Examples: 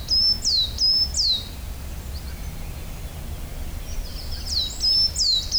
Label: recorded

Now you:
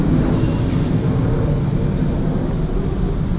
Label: recorded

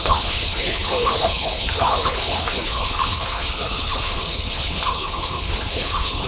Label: remade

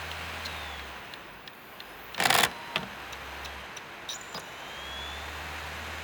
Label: recorded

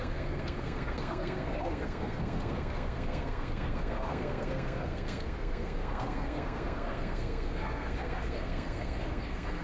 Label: remade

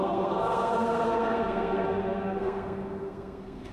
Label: remade